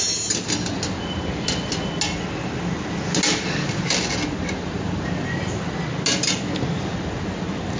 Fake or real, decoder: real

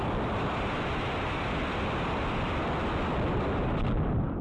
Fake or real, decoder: real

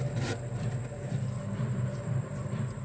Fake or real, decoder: real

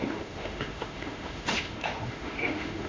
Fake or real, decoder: fake, autoencoder, DAC-VAE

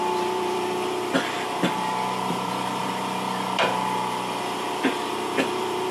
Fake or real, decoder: fake, vocoder, BigVGAN v2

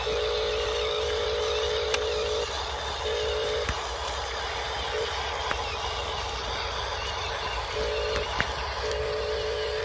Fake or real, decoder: real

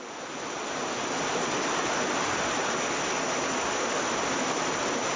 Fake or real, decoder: real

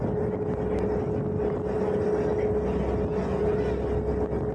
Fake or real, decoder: real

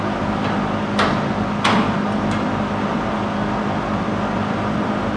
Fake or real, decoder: real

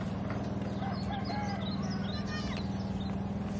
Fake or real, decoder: real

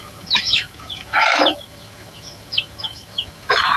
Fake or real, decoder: fake, autoencoder, DAC-VAE